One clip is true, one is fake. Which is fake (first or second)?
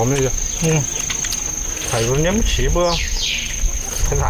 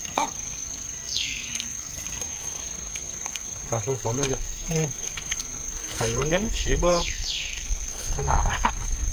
second